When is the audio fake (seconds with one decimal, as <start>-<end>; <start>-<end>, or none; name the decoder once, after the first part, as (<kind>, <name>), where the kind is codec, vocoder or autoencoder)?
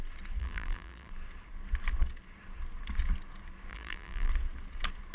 0.4-1.1 (vocoder, BigVGAN v2); 3.7-4.3